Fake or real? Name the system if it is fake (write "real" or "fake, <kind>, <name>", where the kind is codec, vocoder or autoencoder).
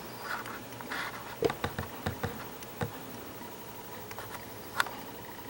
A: real